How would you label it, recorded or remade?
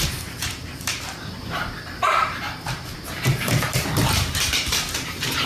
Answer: remade